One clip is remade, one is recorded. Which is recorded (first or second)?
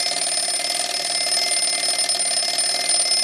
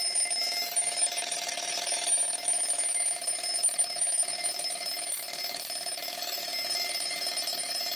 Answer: first